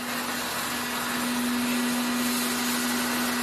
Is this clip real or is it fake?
real